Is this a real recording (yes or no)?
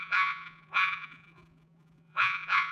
no